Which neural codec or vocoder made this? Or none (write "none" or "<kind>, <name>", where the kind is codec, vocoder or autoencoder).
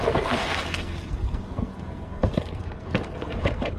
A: codec, SNAC